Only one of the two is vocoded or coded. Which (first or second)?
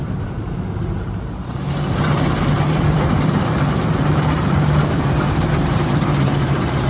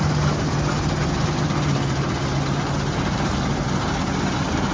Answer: first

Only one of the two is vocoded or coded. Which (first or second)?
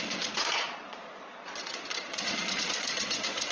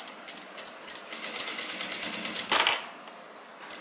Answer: first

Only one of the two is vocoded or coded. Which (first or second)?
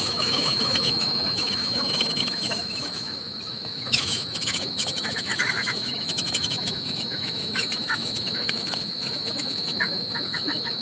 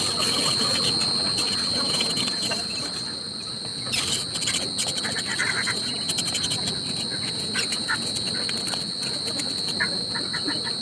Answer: first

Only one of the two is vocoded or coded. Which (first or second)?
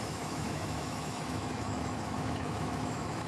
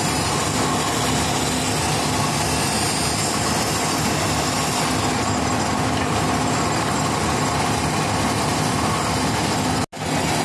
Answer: first